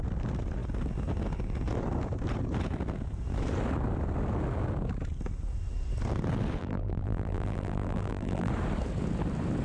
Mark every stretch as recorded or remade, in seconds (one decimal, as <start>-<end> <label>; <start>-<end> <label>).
0.0-6.6 recorded; 6.6-8.5 remade; 8.5-9.6 recorded